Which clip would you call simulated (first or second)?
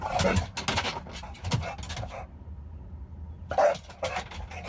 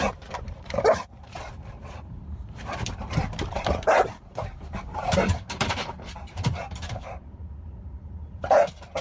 second